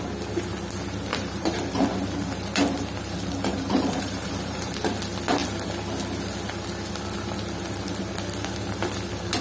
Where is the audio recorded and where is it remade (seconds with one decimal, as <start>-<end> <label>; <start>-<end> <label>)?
0.0-1.1 recorded; 1.1-1.9 remade; 1.9-3.5 recorded; 3.5-4.7 remade; 4.7-9.4 recorded